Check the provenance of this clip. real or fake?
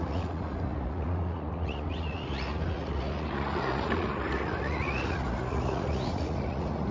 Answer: fake